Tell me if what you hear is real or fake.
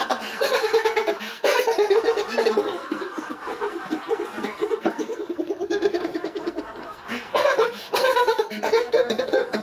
fake